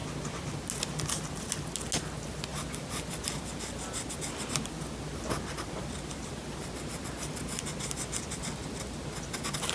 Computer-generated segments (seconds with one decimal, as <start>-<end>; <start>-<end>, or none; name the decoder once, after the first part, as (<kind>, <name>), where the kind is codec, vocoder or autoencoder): none